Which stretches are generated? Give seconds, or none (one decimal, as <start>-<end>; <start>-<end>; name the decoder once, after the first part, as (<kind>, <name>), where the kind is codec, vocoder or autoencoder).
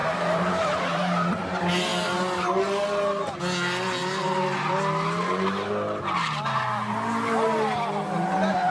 0.0-1.3 (vocoder, BigVGAN v2)